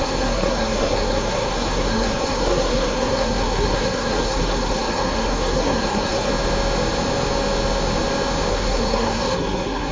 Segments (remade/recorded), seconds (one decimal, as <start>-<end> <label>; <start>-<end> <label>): 0.0-6.3 remade; 6.3-8.5 recorded; 8.5-9.9 remade